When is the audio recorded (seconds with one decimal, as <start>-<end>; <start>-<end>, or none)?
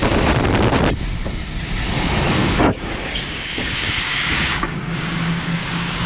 0.0-2.4